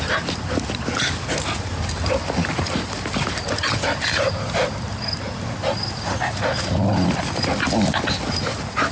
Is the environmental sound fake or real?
real